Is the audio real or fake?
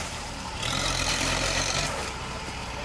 fake